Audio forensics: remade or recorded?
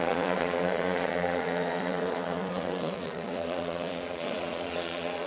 remade